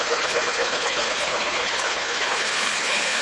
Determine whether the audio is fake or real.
fake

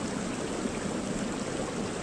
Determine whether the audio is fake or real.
real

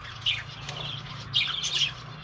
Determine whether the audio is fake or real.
real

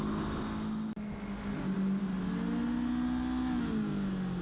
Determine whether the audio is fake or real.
real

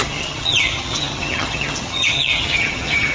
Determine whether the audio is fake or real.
fake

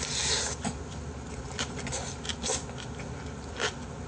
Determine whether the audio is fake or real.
real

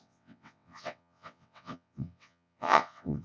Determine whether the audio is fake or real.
fake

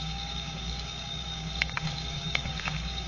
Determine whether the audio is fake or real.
fake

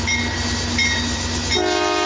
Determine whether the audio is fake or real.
real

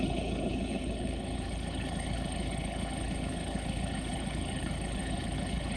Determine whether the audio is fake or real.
fake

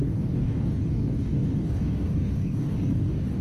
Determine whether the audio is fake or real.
fake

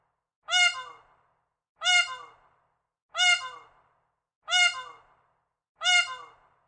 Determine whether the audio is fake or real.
real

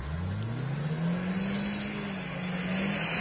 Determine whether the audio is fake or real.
real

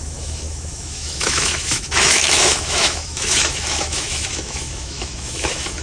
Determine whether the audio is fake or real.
fake